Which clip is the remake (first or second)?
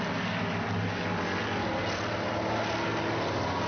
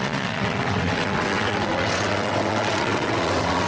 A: second